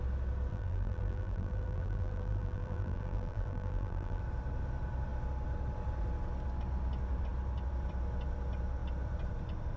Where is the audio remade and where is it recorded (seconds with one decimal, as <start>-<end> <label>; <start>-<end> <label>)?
0.0-0.5 recorded; 0.5-4.2 remade; 4.2-9.8 recorded

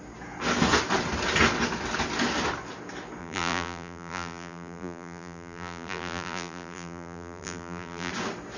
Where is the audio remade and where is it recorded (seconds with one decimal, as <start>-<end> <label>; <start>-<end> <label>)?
0.0-3.2 recorded; 3.2-8.1 remade; 8.1-8.6 recorded